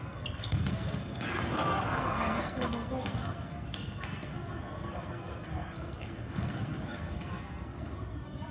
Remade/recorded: remade